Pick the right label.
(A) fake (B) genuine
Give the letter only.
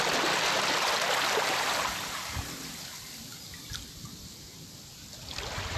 B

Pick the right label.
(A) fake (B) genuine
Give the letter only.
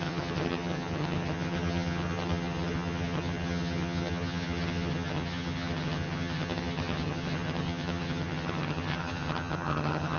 A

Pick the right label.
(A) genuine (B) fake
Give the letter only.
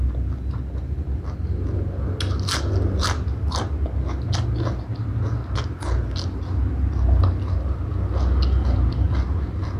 A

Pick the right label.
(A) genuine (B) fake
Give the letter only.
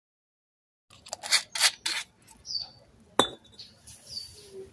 A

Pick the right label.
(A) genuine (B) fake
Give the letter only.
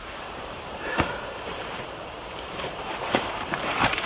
B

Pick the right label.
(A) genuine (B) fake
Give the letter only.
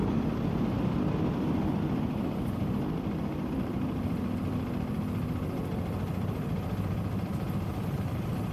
B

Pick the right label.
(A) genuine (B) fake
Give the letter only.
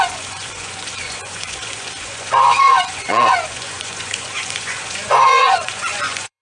B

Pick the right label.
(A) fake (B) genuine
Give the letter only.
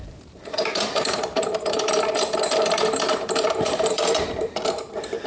A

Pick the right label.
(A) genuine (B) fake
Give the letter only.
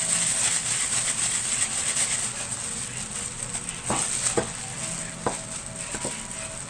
A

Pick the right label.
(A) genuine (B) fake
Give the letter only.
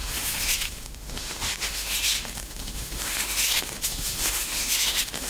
B